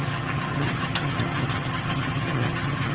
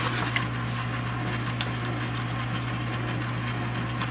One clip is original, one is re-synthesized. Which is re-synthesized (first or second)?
first